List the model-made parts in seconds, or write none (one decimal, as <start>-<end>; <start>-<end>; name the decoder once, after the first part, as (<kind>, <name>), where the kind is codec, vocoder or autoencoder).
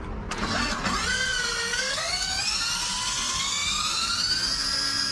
1.7-2.4 (codec, DAC)